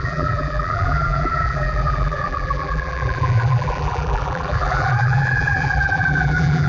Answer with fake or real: fake